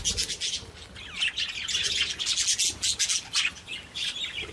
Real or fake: real